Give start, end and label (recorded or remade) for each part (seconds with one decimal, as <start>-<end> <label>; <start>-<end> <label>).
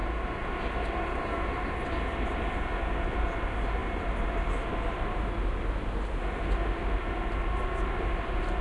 0.0-8.6 recorded